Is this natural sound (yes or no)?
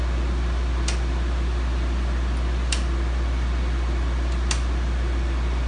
yes